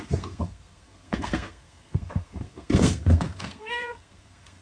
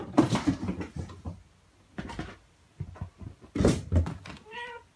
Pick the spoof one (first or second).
first